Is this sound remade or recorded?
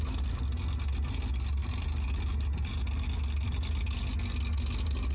recorded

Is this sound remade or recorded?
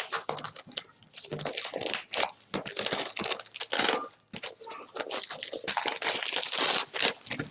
recorded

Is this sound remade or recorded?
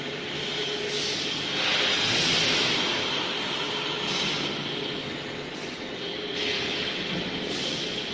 recorded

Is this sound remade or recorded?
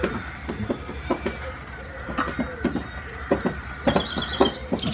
recorded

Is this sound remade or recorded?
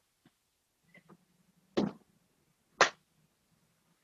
recorded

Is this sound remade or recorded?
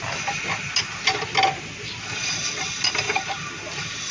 recorded